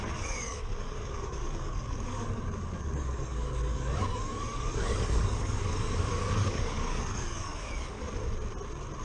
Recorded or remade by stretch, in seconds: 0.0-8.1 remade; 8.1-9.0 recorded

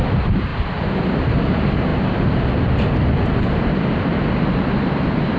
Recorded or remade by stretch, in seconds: 0.0-5.4 recorded